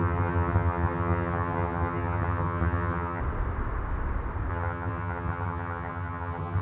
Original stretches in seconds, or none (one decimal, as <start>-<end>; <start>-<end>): 3.2-4.5